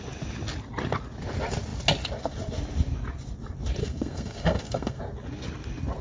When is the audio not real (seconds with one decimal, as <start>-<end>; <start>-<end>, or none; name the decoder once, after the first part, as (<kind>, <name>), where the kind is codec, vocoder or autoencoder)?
3.8-5.0 (codec, SNAC)